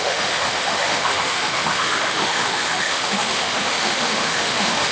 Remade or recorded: remade